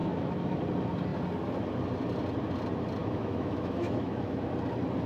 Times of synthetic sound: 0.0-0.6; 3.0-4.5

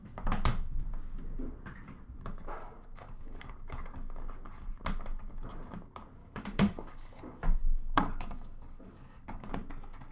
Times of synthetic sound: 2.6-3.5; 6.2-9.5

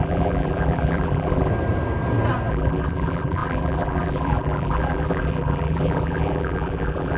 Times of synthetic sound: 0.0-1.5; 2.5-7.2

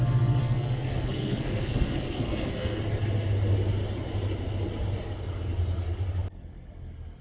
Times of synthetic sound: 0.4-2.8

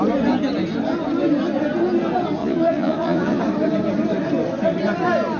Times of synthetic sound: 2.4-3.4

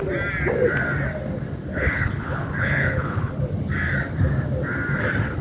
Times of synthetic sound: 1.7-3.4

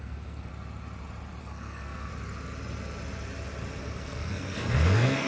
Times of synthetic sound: 0.0-0.5; 1.4-2.1; 3.8-5.3

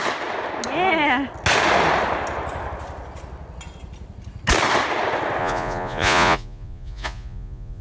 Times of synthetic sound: 5.4-7.8